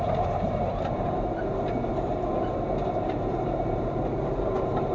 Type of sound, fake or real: fake